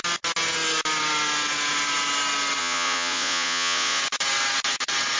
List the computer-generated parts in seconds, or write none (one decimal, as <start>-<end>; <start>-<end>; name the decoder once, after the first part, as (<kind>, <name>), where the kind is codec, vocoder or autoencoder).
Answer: 2.6-4.0 (vocoder, Vocos)